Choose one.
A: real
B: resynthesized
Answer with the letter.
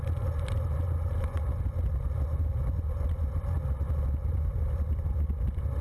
A